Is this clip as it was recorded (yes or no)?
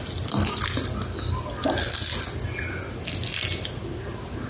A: yes